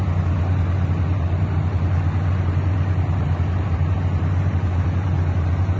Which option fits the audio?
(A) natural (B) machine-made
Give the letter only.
B